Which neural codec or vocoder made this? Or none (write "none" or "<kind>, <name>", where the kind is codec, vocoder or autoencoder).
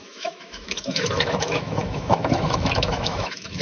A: autoencoder, DAC-VAE